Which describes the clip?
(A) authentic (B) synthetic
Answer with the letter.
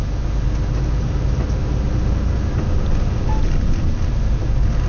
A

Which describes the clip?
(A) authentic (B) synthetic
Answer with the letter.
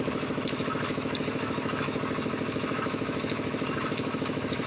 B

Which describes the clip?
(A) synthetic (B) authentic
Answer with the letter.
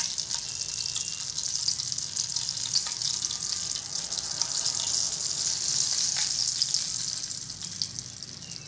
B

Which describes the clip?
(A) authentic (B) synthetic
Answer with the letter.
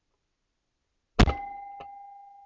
A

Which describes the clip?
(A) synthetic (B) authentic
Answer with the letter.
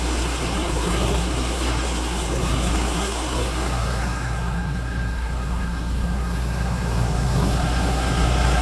A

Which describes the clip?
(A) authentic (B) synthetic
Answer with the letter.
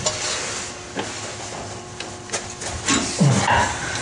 A